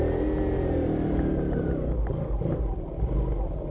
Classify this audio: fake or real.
real